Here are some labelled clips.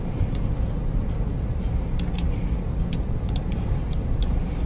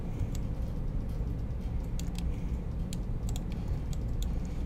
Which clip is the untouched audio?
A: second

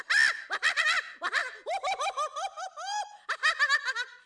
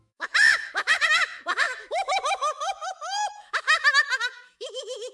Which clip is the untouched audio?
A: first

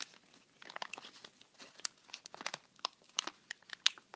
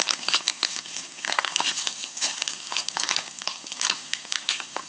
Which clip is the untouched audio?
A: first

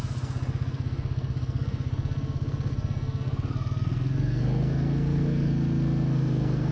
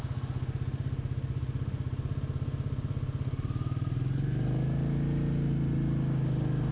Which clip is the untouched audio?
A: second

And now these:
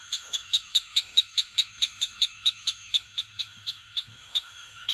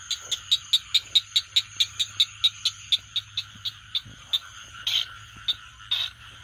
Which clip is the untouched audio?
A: second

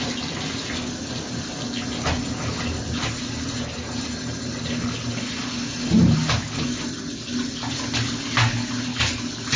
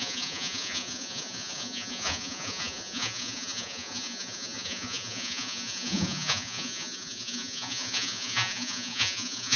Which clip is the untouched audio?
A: first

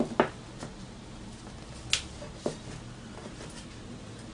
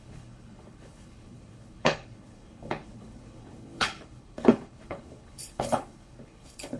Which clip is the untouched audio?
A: first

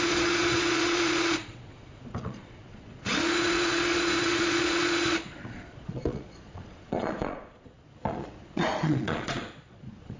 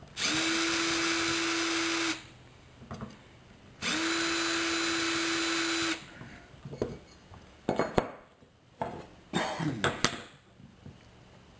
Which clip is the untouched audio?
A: second